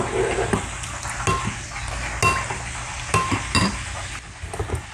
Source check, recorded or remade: recorded